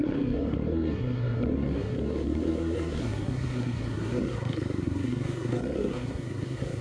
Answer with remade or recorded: remade